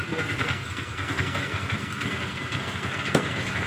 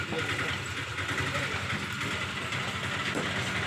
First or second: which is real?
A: second